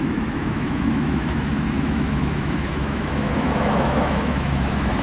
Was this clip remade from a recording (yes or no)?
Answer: yes